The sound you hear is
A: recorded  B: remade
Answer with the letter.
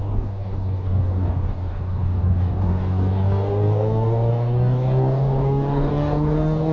B